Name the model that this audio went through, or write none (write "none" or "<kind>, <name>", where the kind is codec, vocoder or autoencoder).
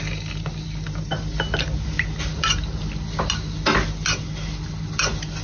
none